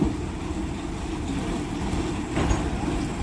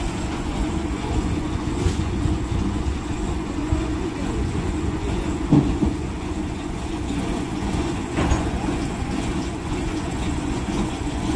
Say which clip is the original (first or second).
first